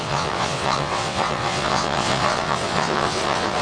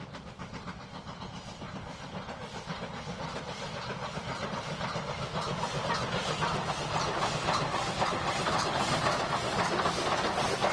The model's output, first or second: first